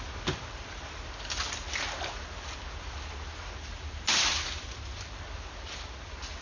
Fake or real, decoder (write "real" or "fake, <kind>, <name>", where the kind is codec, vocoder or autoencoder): real